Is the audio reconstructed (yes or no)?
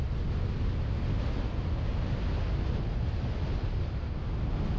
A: no